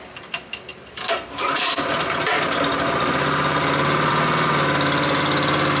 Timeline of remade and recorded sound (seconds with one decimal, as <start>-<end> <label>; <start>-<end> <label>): 0.0-5.8 recorded

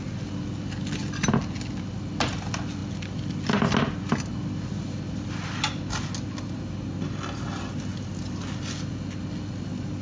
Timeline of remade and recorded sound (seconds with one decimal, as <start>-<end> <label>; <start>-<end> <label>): 0.0-10.0 recorded

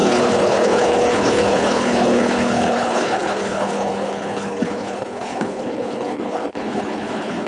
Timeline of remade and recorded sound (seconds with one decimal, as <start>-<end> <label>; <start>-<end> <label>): 0.0-7.5 remade

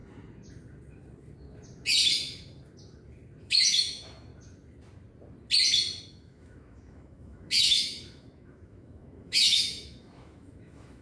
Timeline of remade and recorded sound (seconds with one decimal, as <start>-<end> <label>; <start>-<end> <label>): 0.0-3.4 recorded; 3.4-4.3 remade; 4.3-6.1 recorded; 6.1-11.0 remade

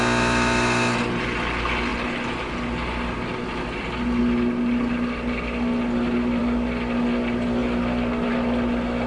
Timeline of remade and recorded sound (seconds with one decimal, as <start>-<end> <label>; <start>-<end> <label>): 0.0-9.1 recorded

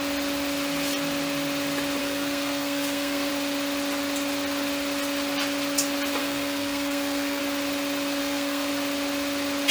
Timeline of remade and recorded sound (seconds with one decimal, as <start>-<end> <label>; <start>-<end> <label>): 0.0-2.0 recorded; 2.0-3.3 remade; 3.3-6.2 recorded; 6.2-7.4 remade; 7.4-8.2 recorded; 8.2-8.7 remade; 8.7-9.7 recorded

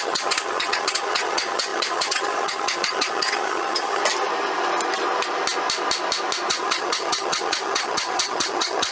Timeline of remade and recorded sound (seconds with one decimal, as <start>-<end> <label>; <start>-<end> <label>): 0.0-4.0 remade; 4.0-6.5 recorded; 6.5-8.9 remade